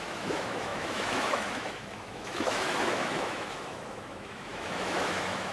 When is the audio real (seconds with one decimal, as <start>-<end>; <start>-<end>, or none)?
none

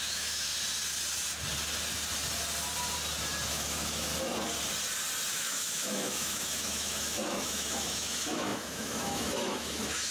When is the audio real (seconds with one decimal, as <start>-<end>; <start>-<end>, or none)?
0.5-3.5; 4.1-5.3

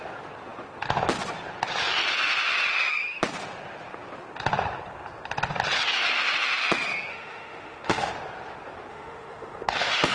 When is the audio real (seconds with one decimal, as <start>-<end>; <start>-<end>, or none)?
0.0-7.1; 8.1-8.9